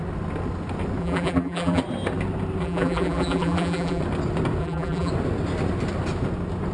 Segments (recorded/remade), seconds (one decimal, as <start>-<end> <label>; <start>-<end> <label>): 0.0-1.0 recorded; 1.0-1.8 remade; 1.8-2.6 recorded; 2.6-4.0 remade; 4.0-4.6 recorded; 4.6-5.1 remade; 5.1-6.7 recorded